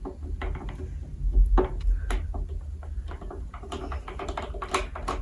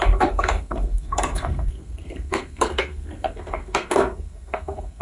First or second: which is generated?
second